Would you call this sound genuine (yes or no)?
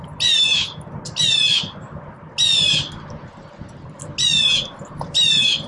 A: yes